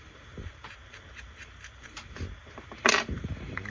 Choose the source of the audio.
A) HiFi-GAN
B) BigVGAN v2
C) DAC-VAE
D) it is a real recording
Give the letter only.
B